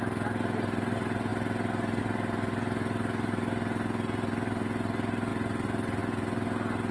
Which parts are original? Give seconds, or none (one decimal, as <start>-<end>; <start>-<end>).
0.0-6.9